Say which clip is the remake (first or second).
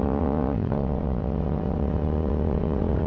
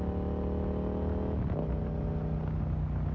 first